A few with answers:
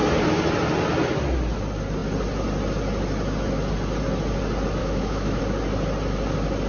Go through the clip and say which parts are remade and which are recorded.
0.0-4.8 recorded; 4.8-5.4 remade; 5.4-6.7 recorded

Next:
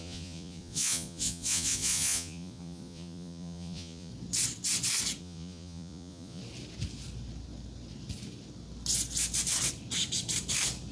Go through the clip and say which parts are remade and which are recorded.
0.0-4.1 remade; 4.1-5.2 recorded; 5.2-6.4 remade; 6.4-10.9 recorded

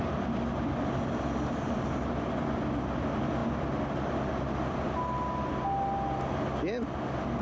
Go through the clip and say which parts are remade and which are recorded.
0.0-7.4 recorded

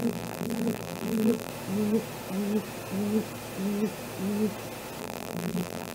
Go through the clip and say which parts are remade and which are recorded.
0.0-1.5 remade; 1.5-5.0 recorded; 5.0-5.9 remade